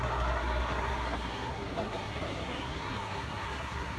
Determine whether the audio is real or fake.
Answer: fake